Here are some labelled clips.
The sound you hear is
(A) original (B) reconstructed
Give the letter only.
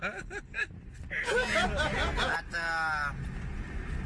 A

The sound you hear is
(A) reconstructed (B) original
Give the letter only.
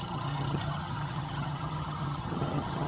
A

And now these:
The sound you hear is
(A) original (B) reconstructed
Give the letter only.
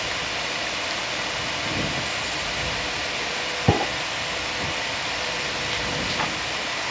A